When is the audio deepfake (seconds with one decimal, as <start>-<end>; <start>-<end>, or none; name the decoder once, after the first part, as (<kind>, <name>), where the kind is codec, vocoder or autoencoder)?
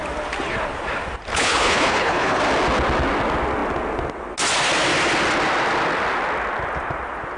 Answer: 1.3-2.4 (codec, HILCodec)